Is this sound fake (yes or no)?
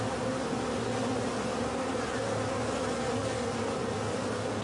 no